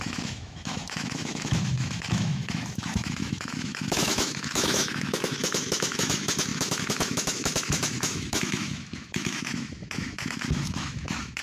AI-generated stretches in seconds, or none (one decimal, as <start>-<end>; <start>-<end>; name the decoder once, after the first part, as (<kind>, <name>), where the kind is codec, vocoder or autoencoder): 0.0-11.4 (autoencoder, DAC-VAE)